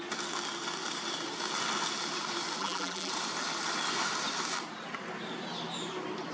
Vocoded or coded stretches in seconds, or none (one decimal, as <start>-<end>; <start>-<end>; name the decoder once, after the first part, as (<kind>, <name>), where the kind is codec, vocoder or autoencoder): 2.6-3.1 (vocoder, BigVGAN v2)